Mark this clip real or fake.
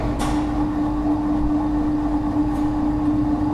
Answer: real